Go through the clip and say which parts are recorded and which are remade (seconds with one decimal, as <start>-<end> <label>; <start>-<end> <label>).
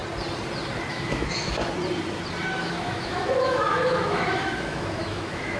0.0-0.9 recorded; 0.9-1.6 remade; 1.6-2.6 recorded; 2.6-5.6 remade